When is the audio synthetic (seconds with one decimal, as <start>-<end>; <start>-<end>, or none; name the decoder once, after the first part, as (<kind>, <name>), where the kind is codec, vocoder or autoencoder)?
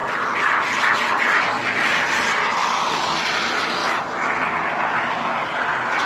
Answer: 2.6-3.1 (codec, DAC)